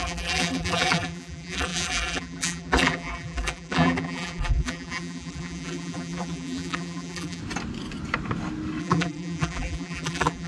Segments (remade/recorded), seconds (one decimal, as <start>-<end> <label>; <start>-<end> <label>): 0.0-7.4 remade; 7.4-8.8 recorded; 8.8-10.5 remade